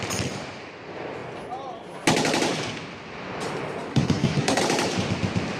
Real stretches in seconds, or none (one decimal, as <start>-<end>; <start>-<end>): 0.0-3.9; 4.6-5.6